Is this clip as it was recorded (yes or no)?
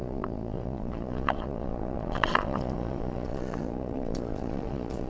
no